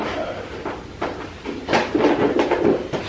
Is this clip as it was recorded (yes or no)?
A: yes